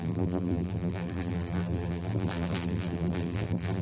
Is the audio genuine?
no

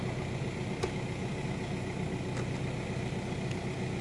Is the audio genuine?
yes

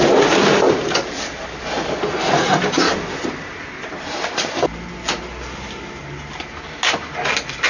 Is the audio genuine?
yes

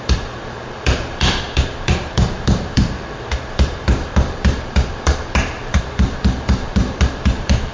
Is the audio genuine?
no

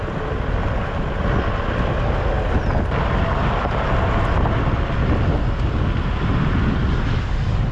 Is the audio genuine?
yes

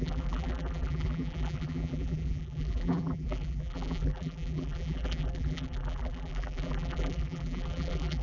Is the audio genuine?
no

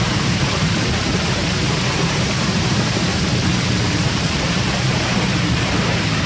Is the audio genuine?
no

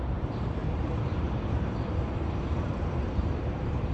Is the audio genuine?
no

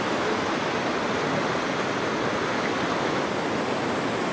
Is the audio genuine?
yes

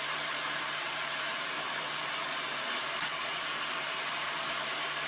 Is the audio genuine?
no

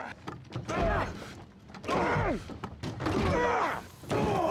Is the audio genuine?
yes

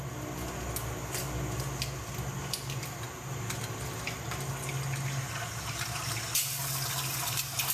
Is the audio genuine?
yes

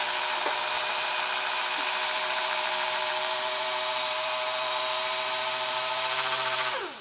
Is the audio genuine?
no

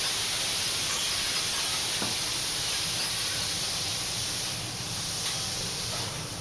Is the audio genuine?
yes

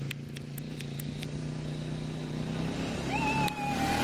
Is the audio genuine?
yes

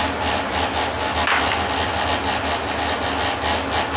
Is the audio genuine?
yes